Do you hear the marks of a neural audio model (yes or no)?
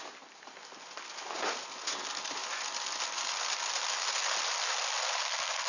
no